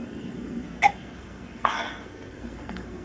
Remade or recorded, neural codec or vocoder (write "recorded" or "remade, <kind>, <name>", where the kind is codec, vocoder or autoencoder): remade, codec, SNAC